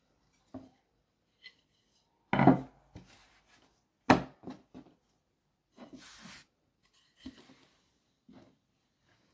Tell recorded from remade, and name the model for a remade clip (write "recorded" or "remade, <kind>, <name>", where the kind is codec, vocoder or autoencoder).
recorded